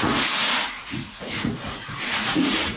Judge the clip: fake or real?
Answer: fake